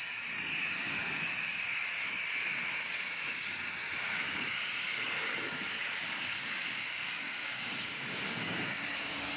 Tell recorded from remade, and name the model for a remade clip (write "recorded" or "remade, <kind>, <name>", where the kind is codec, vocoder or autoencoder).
remade, codec, DAC